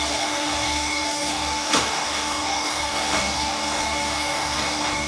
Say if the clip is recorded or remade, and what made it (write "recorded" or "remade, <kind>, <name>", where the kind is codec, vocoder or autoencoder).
remade, codec, DAC